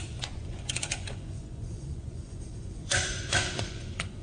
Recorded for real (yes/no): no